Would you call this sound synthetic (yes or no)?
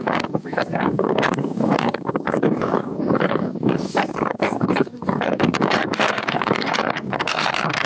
yes